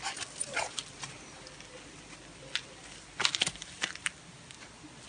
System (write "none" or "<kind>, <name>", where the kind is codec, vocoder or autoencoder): none